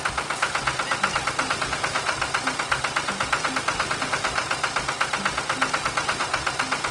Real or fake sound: real